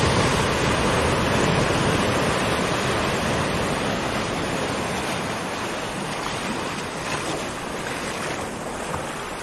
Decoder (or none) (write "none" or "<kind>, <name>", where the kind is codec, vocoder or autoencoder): none